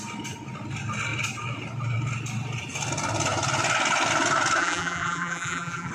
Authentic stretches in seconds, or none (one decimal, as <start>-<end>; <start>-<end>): 0.0-4.6

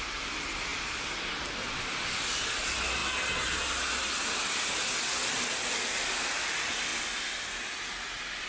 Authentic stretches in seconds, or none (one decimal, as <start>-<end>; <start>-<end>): 3.0-5.3

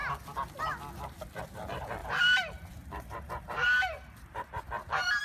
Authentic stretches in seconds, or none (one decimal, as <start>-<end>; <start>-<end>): 0.0-2.0

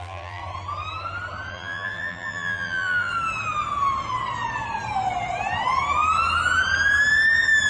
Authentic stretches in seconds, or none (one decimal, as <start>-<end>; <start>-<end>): 0.4-1.5; 3.1-7.7

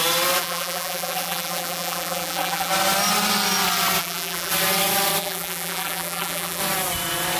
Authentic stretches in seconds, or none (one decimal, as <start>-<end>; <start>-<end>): 0.0-0.4; 2.7-4.0; 4.5-5.2; 6.6-7.4

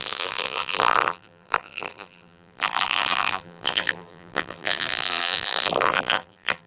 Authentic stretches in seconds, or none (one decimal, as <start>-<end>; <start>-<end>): none